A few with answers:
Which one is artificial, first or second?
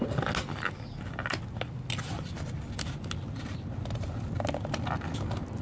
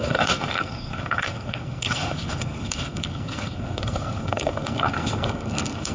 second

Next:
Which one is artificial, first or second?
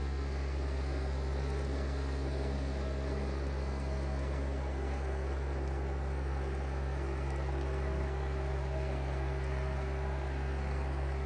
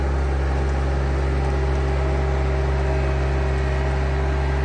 first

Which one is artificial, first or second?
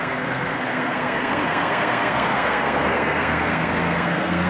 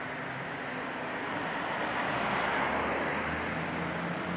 first